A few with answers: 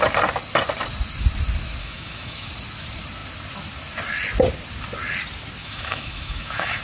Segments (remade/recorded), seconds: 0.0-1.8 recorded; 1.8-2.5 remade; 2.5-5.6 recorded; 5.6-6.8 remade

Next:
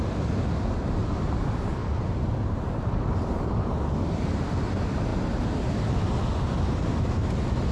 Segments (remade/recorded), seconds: 0.0-7.7 recorded

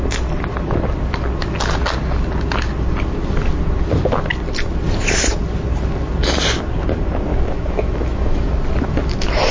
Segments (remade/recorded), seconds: 0.0-7.3 recorded; 7.3-8.5 remade; 8.5-9.5 recorded

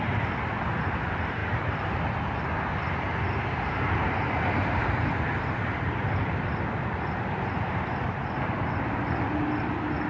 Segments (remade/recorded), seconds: 0.0-4.8 recorded; 4.8-7.2 remade; 7.2-10.1 recorded

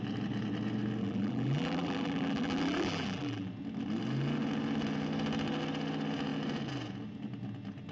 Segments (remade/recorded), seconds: 0.0-1.0 recorded; 1.0-3.5 remade; 3.5-7.9 recorded

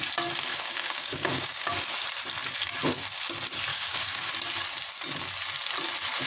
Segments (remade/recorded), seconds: 0.0-0.5 recorded; 0.5-1.7 remade; 1.7-3.7 recorded; 3.7-4.3 remade; 4.3-6.3 recorded

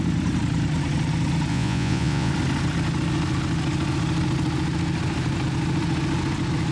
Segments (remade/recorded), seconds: 0.0-1.5 recorded; 1.5-2.3 remade; 2.3-6.7 recorded

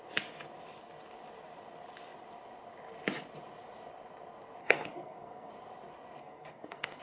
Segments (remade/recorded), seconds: 0.0-4.6 recorded; 4.6-5.5 remade; 5.5-6.2 recorded; 6.2-7.0 remade